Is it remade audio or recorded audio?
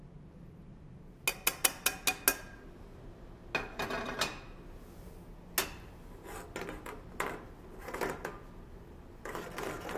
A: recorded